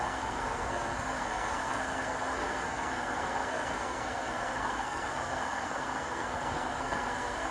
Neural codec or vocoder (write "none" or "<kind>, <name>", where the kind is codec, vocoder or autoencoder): codec, SNAC